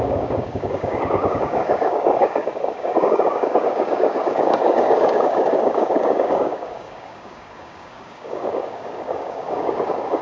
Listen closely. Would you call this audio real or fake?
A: fake